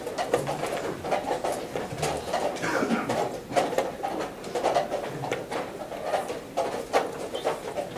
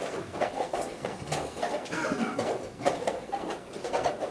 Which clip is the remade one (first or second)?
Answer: second